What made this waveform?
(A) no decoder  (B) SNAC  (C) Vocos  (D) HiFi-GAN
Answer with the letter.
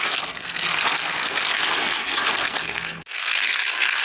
B